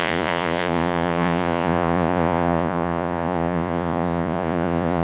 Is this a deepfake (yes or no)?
yes